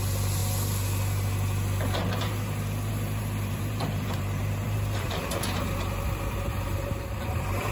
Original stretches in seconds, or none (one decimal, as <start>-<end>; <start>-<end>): 0.4-2.9